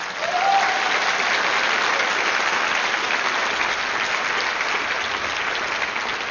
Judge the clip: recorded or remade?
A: recorded